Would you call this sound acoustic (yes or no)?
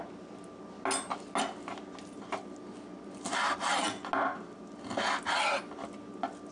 yes